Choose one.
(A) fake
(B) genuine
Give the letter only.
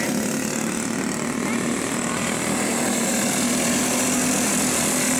B